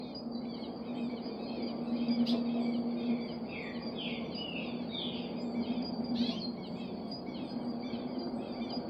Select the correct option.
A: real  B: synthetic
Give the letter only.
A